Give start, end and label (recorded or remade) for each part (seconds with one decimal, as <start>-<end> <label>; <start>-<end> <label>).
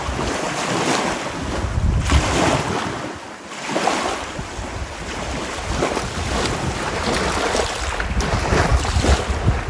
0.0-9.7 recorded